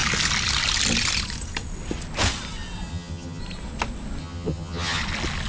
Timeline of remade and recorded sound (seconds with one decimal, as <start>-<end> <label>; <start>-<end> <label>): 0.0-2.9 recorded; 2.9-3.4 remade; 3.4-4.2 recorded; 4.2-5.0 remade; 5.0-5.5 recorded